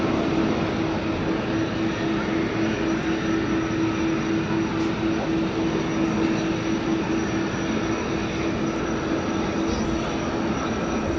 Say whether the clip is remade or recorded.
recorded